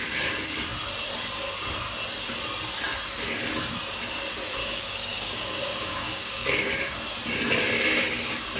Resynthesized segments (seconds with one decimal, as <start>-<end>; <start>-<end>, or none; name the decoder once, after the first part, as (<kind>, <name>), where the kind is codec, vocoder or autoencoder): 4.6-6.7 (codec, DAC)